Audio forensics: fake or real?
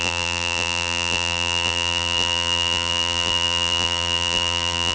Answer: fake